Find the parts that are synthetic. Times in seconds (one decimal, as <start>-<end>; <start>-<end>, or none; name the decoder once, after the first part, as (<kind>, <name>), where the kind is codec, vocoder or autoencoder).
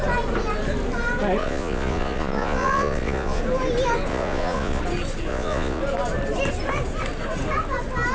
1.4-3.4 (vocoder, Vocos); 4.1-4.8; 5.3-5.8